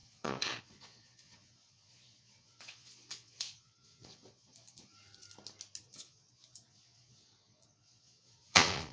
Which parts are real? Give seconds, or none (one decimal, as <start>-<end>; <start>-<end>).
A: 4.9-5.8